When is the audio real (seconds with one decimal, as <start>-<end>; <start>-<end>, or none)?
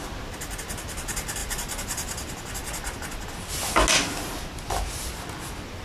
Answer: 0.0-5.8